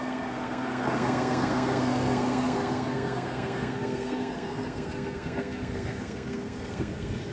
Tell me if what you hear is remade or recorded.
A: remade